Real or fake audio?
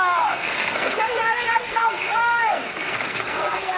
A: fake